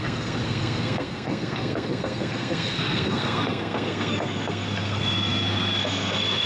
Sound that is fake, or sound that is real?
fake